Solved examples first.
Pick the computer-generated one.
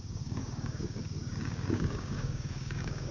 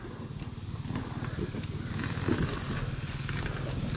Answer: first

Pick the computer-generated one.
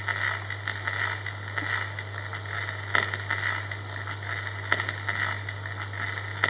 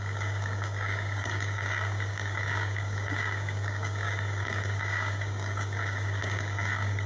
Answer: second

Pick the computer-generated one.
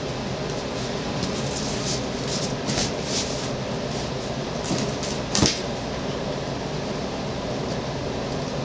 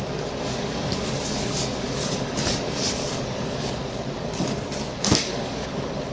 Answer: second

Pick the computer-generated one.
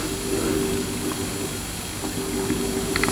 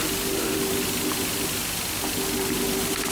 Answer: first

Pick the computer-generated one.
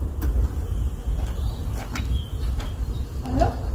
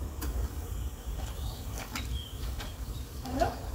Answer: second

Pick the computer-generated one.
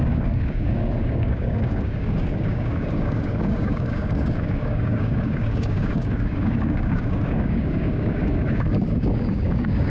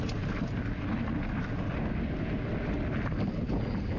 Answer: first